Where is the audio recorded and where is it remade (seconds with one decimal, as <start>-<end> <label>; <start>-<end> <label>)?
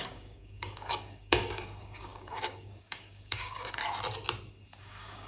0.0-3.8 remade; 3.8-4.8 recorded; 4.8-5.3 remade